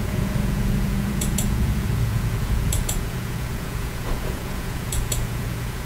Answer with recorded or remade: remade